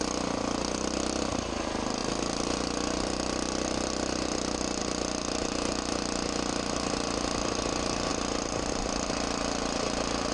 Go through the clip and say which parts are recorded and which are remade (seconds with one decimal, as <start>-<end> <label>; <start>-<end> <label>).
0.0-8.1 recorded; 8.1-8.7 remade; 8.7-10.3 recorded

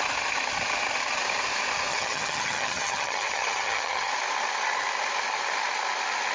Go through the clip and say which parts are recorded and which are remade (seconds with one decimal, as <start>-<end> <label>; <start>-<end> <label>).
0.0-1.9 recorded; 1.9-4.1 remade; 4.1-6.3 recorded

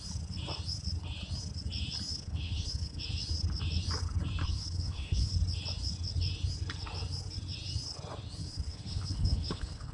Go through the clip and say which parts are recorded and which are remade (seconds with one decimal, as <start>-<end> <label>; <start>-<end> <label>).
0.0-2.1 recorded; 2.1-3.0 remade; 3.0-4.4 recorded; 4.4-5.3 remade; 5.3-8.4 recorded; 8.4-9.9 remade